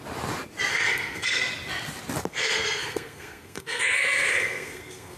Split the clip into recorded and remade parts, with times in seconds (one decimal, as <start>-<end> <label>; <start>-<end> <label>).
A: 0.0-0.7 recorded; 0.7-1.4 remade; 1.4-2.3 recorded; 2.3-5.2 remade